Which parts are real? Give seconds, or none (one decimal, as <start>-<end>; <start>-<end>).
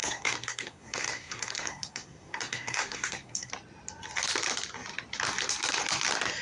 3.5-6.4